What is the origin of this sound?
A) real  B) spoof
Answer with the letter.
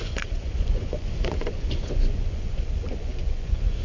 B